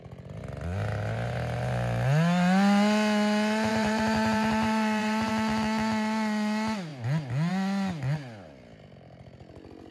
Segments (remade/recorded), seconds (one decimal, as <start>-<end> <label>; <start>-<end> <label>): 0.0-3.7 recorded; 3.7-5.3 remade; 5.3-9.9 recorded